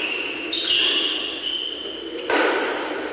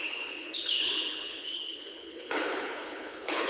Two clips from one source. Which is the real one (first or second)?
first